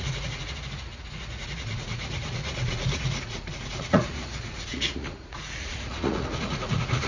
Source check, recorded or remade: remade